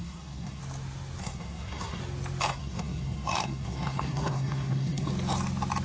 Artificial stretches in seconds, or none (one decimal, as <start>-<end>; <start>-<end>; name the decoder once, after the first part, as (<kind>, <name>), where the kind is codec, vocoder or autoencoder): 0.0-0.6 (codec, SNAC); 1.2-2.0; 2.5-5.1